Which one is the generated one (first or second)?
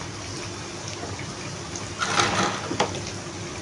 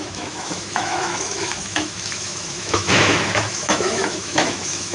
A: second